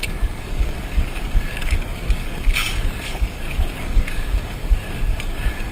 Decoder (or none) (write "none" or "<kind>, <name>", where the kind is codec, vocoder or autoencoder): codec, DAC